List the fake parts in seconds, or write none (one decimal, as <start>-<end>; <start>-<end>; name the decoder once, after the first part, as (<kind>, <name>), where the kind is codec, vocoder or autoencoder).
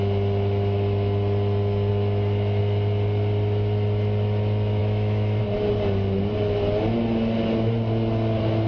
1.9-2.6 (autoencoder, DAC-VAE); 4.8-5.4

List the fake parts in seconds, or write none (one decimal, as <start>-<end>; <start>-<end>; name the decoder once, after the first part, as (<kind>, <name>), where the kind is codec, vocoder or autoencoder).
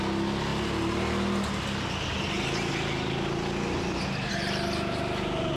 none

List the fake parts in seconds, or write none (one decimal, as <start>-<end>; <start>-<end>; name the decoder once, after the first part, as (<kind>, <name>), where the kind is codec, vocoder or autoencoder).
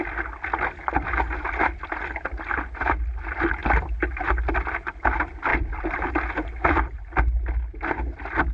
none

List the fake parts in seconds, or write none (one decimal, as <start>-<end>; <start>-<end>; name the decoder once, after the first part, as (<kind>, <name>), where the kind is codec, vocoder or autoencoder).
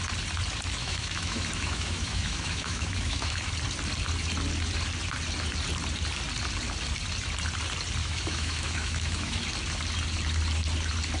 0.8-3.5 (autoencoder, DAC-VAE); 8.0-9.4